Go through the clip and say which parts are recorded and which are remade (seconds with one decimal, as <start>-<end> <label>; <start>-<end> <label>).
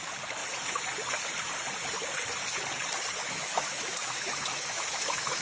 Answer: 0.0-3.2 recorded; 3.2-5.4 remade